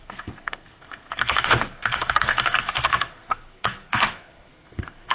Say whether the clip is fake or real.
fake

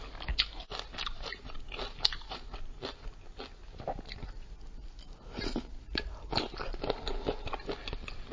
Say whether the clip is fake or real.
real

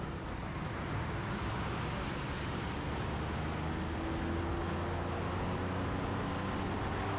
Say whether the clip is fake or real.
real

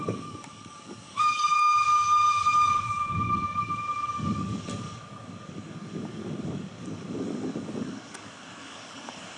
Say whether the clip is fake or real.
fake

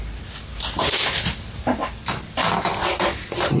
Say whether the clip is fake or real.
real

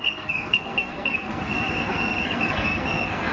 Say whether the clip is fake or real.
fake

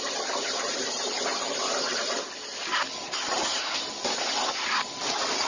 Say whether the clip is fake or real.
real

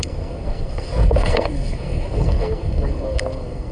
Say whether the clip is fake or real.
fake